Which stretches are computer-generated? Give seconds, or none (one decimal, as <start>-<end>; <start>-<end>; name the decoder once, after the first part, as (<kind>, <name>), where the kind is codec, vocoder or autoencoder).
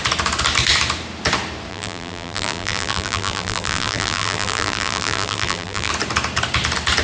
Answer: 1.7-5.9 (vocoder, BigVGAN v2)